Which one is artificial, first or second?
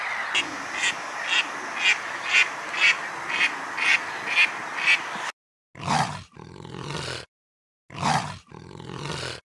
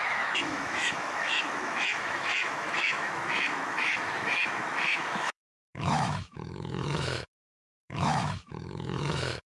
second